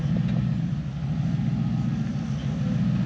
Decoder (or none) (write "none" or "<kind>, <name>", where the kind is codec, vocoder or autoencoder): none